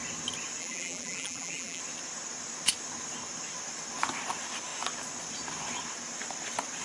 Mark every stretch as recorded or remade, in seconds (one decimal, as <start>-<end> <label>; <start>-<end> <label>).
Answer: 0.0-0.6 recorded; 0.6-1.8 remade; 1.8-6.8 recorded